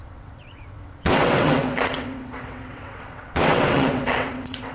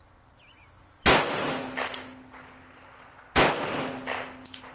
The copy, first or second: first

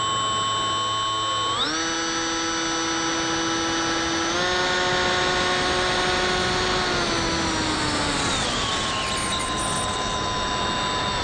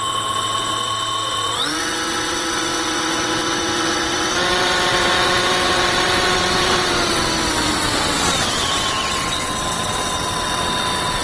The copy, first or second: second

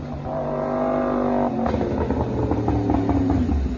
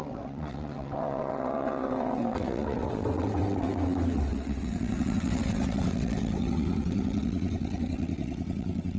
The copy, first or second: second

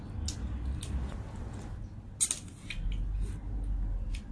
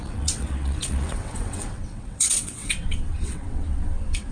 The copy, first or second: second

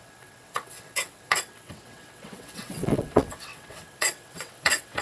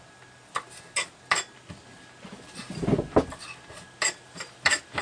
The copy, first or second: first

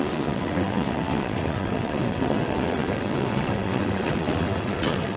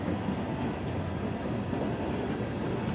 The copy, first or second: first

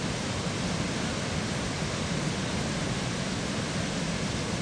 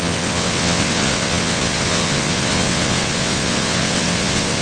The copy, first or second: second